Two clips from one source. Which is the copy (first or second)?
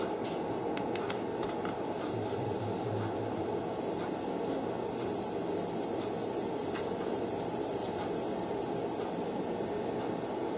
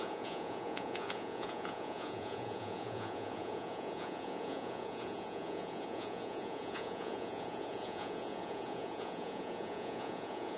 second